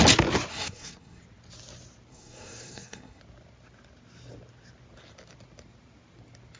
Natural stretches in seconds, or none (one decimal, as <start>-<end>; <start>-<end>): 0.0-0.5; 1.2-2.1; 3.2-6.6